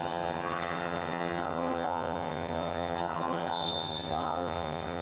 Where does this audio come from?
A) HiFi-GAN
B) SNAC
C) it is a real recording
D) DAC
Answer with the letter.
A